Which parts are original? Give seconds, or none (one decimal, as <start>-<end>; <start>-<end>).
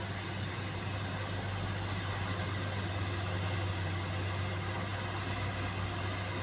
0.0-6.4